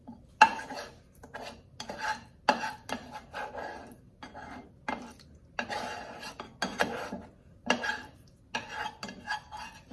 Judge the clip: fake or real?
real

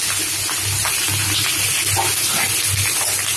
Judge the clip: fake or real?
real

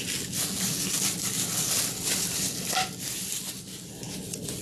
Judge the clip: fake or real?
real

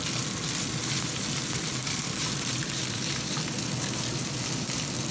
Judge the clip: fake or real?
fake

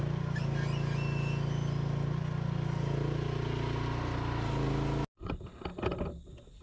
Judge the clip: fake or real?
real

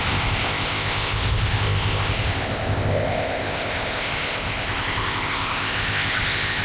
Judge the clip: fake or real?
fake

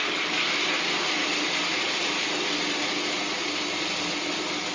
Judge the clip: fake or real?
real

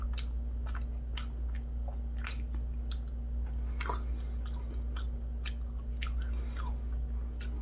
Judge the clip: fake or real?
real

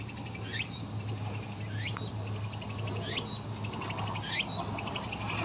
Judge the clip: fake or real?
real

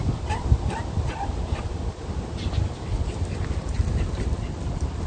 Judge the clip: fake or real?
real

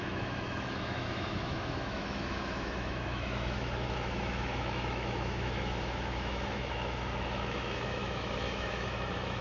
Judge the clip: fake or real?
fake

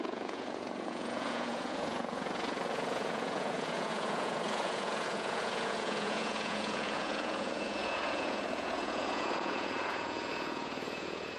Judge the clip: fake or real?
fake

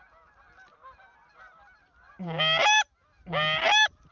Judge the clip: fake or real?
real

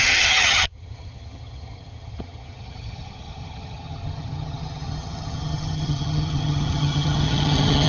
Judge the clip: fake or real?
fake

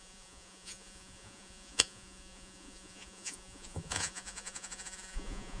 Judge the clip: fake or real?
fake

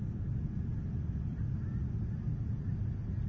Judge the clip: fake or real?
real